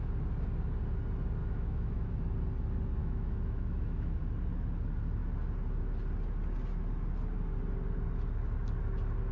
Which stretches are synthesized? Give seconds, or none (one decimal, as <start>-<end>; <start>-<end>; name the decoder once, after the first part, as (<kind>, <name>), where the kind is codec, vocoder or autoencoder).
1.4-2.1 (autoencoder, DAC-VAE); 3.0-4.2